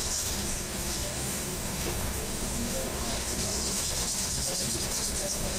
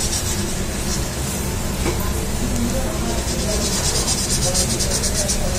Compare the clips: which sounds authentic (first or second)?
second